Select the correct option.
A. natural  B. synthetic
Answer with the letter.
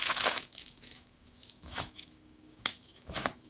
B